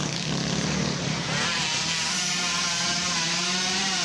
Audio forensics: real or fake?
real